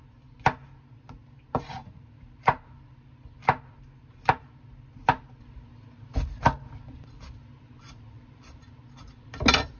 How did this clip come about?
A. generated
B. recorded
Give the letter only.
B